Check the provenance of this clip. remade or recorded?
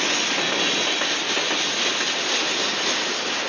recorded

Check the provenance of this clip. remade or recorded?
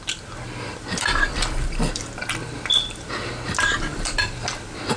remade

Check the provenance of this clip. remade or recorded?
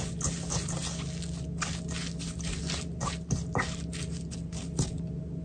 recorded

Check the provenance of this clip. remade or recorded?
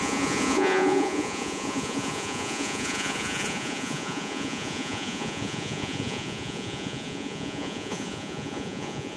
remade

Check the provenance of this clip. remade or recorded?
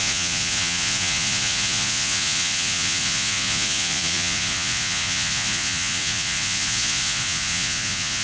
remade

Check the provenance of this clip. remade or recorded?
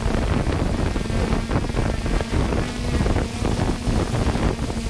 recorded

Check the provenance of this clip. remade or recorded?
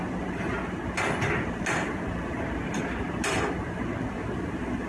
recorded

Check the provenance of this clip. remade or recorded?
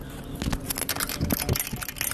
recorded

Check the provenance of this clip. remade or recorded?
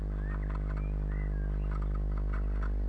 recorded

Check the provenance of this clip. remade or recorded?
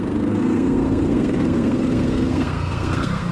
remade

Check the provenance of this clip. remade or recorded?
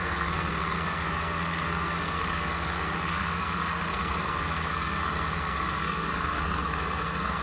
remade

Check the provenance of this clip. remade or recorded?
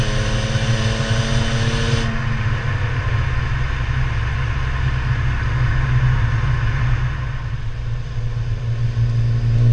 recorded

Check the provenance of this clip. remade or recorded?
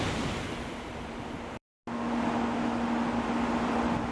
recorded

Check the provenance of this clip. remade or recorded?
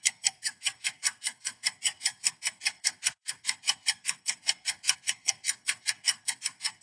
remade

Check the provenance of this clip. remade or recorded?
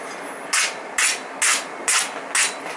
recorded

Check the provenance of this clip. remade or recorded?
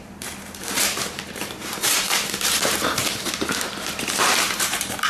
remade